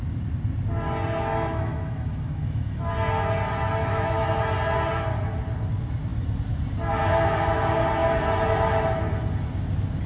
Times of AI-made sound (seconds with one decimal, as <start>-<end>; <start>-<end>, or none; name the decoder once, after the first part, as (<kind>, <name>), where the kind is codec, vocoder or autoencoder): 1.3-2.9 (autoencoder, DAC-VAE); 3.8-4.3